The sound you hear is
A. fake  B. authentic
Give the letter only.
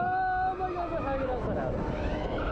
B